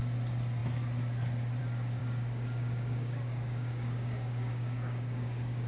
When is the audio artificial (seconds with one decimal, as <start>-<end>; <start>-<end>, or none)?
2.0-5.7